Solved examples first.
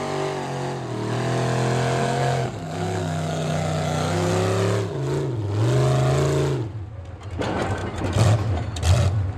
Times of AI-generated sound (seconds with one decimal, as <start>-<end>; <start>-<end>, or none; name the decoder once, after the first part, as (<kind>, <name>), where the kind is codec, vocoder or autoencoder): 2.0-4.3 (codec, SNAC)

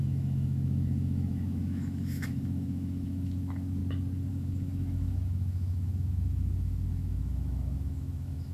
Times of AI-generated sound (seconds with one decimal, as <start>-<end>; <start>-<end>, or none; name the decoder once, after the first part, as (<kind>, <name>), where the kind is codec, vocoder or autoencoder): 0.0-3.8 (autoencoder, DAC-VAE); 4.3-8.5

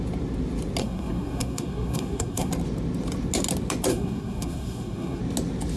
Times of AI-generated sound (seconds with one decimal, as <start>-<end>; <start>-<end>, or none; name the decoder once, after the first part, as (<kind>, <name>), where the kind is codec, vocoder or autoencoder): 0.8-2.5 (codec, SNAC); 3.9-5.2

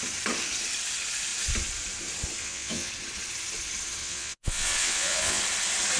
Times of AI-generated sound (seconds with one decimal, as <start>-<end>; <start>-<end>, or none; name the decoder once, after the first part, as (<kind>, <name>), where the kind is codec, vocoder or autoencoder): 2.4-2.9 (vocoder, WaveNeXt); 4.0-5.4

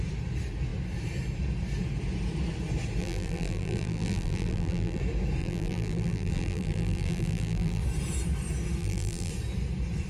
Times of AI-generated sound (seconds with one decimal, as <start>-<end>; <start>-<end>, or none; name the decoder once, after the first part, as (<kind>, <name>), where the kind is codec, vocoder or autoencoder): 3.0-5.0 (vocoder, BigVGAN v2); 5.4-7.8; 8.8-9.3

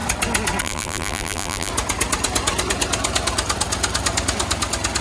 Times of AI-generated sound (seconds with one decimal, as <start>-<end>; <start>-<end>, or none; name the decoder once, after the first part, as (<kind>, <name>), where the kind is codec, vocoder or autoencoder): 0.6-1.7 (vocoder, BigVGAN v2)

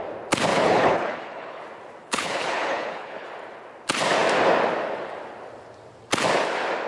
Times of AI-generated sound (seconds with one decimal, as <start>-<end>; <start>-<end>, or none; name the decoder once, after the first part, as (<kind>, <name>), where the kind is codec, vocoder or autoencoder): 0.5-1.6 (codec, HILCodec); 2.0-3.3

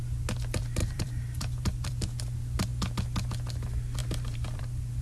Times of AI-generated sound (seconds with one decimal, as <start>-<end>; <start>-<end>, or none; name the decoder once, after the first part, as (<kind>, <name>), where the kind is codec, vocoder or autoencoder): 0.8-1.9 (vocoder, BigVGAN v2); 4.0-4.6